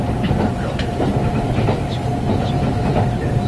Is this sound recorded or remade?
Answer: recorded